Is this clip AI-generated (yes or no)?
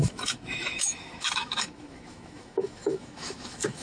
yes